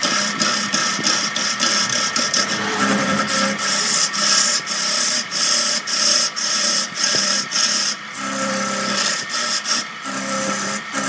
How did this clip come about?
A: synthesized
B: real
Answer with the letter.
A